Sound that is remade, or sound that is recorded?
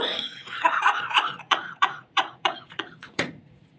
remade